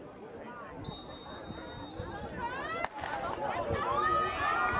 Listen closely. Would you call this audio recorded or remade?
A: recorded